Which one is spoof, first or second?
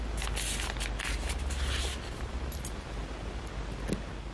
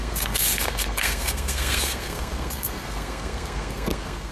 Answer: second